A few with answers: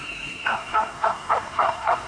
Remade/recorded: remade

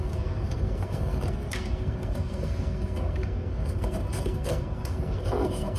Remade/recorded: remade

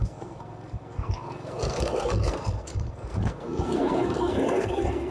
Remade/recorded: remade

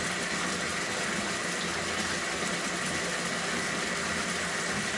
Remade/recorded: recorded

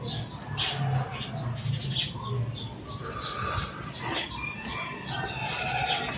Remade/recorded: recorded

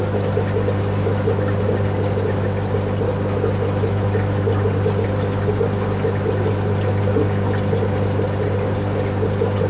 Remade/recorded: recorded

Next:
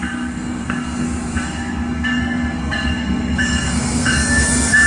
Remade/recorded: remade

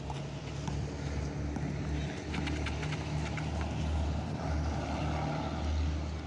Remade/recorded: recorded